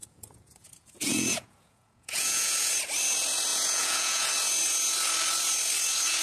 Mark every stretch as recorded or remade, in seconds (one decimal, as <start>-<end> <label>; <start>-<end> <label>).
0.0-2.7 remade; 2.7-3.5 recorded; 3.5-4.3 remade; 4.3-6.2 recorded